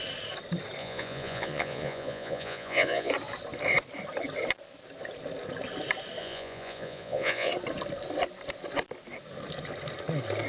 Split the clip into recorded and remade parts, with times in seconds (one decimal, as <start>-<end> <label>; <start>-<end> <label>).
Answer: 0.0-0.8 recorded; 0.8-3.1 remade; 3.1-6.2 recorded; 6.2-7.5 remade; 7.5-10.5 recorded